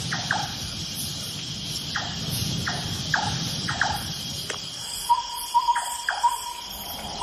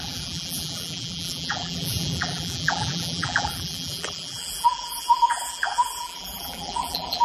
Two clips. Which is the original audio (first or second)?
first